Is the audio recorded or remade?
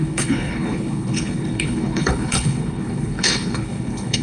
remade